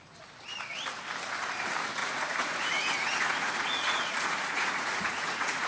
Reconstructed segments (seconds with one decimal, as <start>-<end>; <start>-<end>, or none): 2.0-5.7